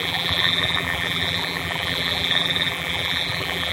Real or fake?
fake